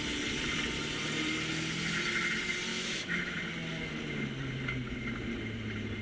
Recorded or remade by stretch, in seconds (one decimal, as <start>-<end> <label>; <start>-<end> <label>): 0.0-2.7 recorded; 2.7-3.4 remade; 3.4-6.0 recorded